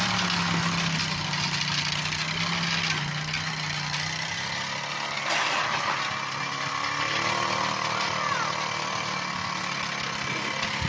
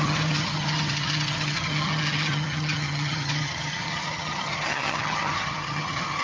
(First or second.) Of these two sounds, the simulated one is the second